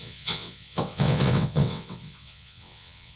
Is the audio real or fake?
fake